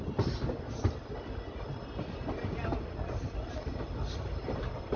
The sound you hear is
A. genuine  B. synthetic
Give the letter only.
A